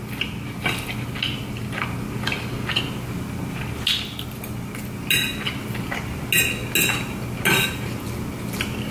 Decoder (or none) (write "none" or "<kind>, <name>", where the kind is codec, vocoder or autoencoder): none